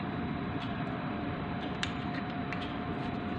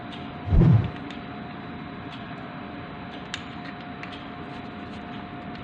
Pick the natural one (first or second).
second